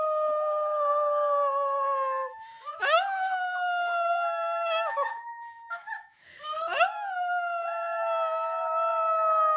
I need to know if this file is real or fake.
fake